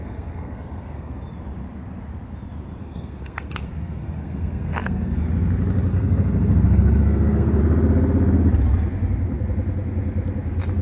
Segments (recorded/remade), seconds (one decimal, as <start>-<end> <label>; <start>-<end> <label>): 0.0-1.2 remade; 1.2-2.8 recorded; 2.8-5.2 remade; 5.2-5.9 recorded; 5.9-7.6 remade; 7.6-10.8 recorded